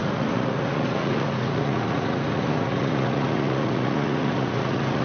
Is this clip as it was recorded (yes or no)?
no